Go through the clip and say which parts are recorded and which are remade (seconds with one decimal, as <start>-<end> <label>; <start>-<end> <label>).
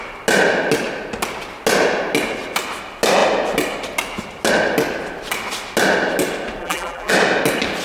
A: 0.0-6.6 recorded; 6.6-7.1 remade; 7.1-7.8 recorded